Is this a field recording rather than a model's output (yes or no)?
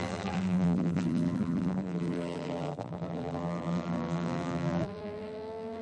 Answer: no